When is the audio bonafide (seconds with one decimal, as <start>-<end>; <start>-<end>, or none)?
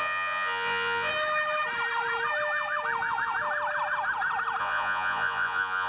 1.1-4.6